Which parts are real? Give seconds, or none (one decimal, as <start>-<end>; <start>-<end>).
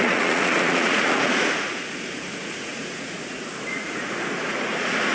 none